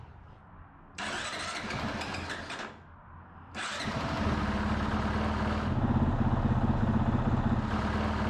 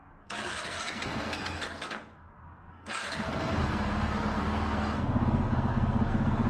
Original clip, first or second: first